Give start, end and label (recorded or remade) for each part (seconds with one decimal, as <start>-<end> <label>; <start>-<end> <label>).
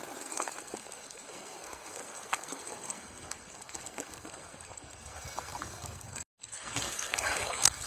0.0-7.9 remade